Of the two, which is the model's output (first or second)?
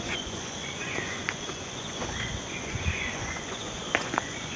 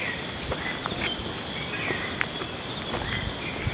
first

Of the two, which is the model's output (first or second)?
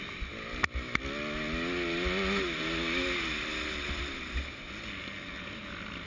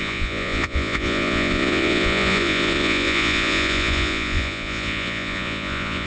second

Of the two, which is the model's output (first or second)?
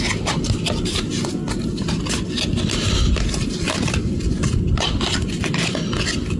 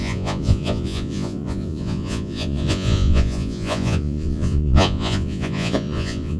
second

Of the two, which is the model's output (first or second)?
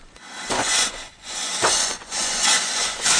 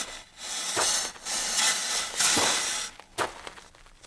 first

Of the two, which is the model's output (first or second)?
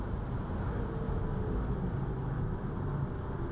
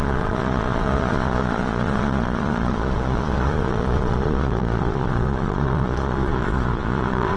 second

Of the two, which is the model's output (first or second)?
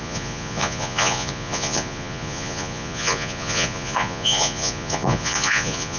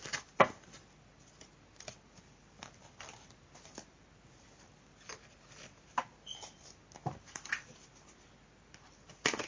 first